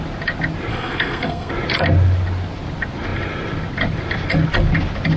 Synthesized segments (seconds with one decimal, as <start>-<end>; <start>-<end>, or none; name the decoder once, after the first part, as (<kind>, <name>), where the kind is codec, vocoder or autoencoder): 0.7-1.5 (codec, SNAC)